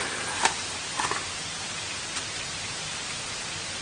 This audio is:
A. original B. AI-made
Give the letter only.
A